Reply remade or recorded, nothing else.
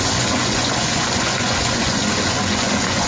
remade